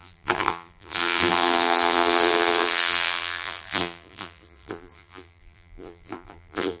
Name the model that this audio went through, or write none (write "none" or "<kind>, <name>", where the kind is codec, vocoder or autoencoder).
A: vocoder, BigVGAN v2